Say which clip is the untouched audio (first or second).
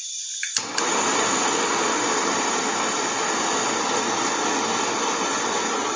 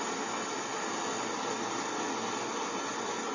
second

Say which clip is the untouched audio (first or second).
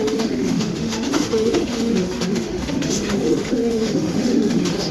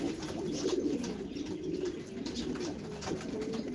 second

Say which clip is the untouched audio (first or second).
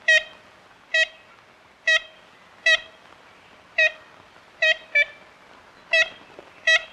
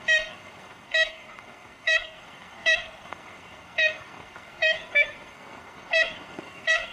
first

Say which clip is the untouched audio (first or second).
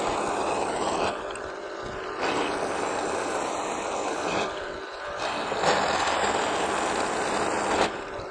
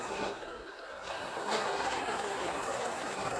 first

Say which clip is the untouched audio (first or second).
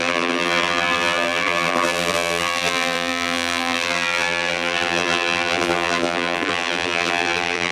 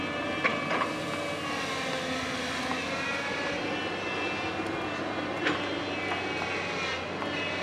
second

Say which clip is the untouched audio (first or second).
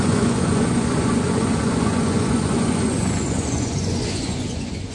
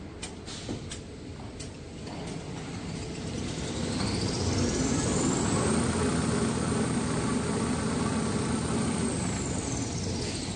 second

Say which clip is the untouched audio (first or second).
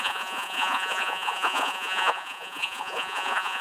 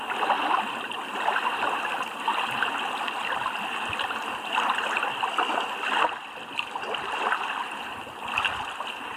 second